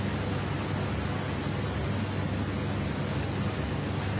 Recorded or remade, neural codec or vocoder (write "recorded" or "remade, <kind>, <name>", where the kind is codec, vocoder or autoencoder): recorded